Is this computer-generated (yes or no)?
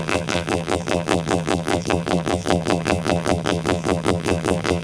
yes